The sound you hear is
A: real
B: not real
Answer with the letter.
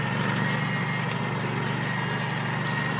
A